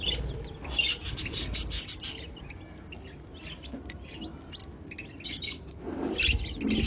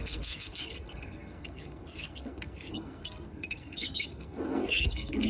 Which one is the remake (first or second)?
second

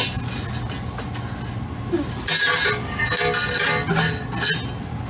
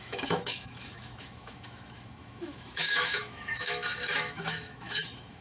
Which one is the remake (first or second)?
second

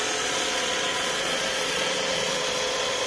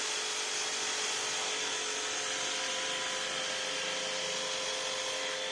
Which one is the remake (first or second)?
first